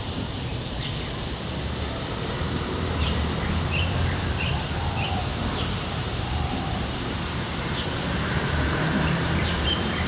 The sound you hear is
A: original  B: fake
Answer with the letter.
B